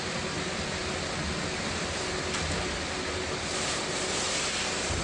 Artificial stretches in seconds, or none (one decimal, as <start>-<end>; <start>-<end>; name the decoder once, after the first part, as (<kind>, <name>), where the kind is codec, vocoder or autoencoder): none